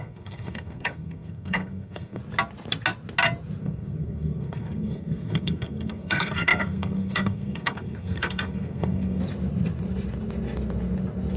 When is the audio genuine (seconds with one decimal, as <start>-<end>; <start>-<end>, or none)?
2.2-3.6; 9.2-11.4